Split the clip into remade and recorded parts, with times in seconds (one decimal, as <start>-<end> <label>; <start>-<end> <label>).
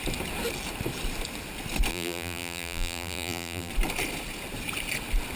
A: 0.0-1.9 recorded; 1.9-3.7 remade; 3.7-5.4 recorded